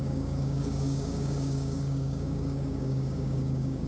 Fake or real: fake